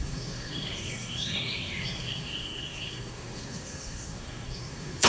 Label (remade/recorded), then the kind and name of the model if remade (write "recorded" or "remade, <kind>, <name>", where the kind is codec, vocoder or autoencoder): remade, codec, SNAC